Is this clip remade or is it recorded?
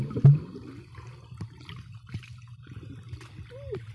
recorded